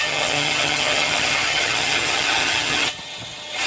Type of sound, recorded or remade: remade